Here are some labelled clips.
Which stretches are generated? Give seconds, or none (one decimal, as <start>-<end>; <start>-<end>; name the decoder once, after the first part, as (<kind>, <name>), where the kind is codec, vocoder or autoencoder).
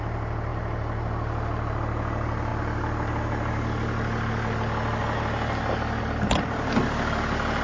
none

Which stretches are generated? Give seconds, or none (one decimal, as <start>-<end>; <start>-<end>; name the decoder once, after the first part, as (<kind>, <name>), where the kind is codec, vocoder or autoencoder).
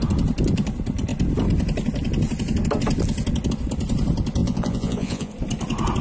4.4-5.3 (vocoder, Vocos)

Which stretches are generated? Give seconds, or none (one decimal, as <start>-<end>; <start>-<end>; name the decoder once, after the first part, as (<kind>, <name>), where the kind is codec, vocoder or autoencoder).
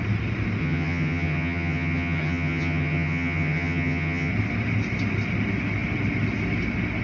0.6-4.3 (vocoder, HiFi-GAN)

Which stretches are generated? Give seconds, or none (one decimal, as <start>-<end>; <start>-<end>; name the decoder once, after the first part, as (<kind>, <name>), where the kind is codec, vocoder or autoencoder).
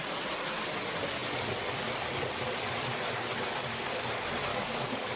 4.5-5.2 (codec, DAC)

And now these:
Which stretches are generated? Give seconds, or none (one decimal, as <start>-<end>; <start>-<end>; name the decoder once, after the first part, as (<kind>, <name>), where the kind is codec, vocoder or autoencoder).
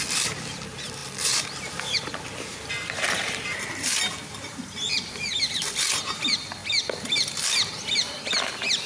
0.0-8.9 (vocoder, BigVGAN v2)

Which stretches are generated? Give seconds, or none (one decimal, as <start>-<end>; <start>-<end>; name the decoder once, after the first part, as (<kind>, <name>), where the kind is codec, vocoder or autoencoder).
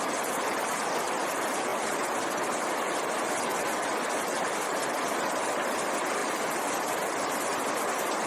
none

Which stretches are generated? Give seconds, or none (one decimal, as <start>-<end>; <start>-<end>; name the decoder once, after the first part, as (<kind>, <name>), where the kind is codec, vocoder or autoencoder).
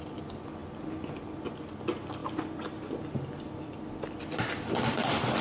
0.0-0.6 (vocoder, BigVGAN v2); 1.5-5.4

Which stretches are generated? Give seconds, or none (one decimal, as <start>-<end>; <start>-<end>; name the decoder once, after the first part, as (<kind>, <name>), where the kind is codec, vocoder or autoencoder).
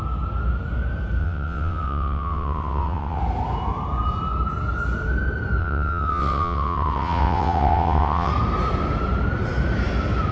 1.2-3.2 (vocoder, WaveNeXt); 5.6-8.3